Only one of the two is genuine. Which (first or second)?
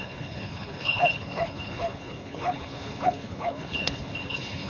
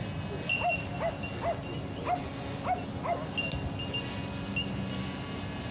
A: second